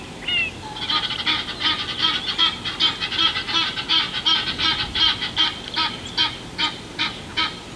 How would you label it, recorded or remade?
recorded